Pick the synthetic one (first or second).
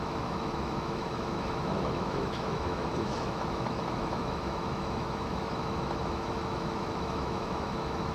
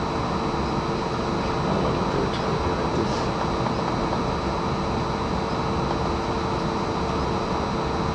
first